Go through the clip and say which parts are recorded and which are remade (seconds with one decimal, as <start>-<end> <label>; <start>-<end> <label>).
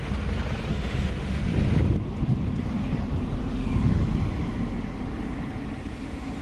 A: 0.0-0.7 recorded; 0.7-1.4 remade; 1.4-3.4 recorded; 3.4-4.0 remade; 4.0-6.4 recorded